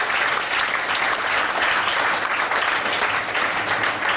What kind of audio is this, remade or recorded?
recorded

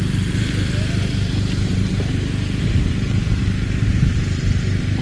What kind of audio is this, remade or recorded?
remade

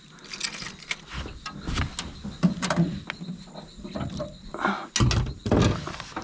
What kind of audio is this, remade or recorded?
recorded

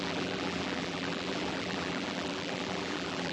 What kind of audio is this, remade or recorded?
remade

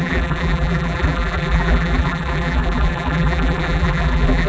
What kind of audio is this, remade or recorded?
remade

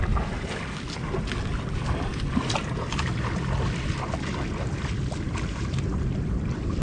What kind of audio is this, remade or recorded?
recorded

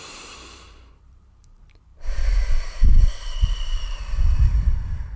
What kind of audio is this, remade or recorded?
remade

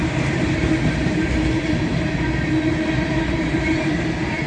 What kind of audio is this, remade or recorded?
remade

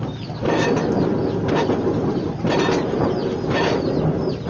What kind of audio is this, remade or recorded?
remade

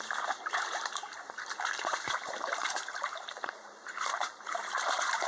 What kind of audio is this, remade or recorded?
remade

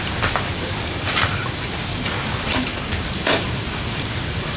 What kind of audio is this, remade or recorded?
remade